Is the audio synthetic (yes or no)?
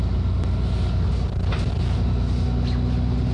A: no